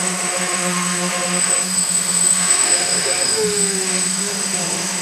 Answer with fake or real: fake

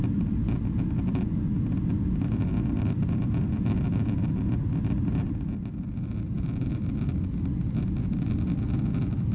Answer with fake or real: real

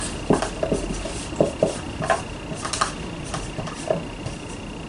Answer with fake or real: real